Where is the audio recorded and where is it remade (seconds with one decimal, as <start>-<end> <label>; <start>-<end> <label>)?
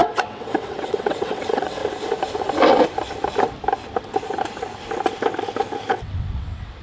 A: 0.0-1.8 remade; 1.8-5.9 recorded; 5.9-6.8 remade